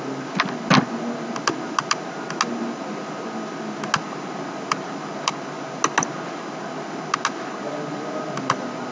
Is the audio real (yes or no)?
yes